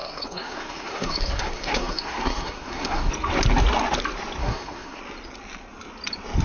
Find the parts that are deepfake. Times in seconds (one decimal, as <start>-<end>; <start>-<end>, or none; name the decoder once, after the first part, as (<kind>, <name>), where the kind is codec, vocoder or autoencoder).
0.0-3.1 (codec, SNAC); 4.4-5.0